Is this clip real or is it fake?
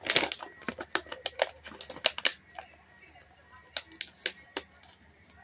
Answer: real